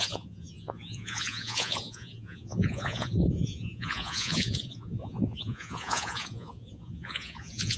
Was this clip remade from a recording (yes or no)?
yes